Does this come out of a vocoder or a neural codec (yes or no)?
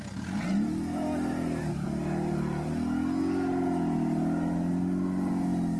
no